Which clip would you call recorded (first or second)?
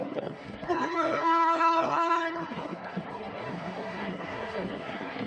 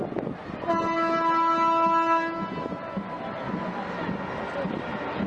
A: second